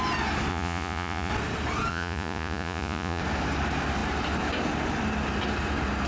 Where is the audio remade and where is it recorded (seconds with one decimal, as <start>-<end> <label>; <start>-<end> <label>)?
0.0-0.5 recorded; 0.5-1.3 remade; 1.3-1.9 recorded; 1.9-3.2 remade; 3.2-6.1 recorded